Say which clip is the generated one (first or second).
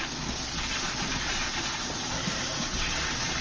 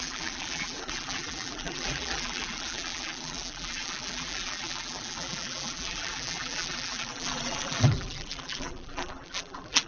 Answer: second